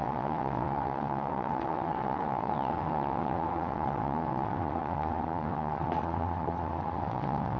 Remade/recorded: remade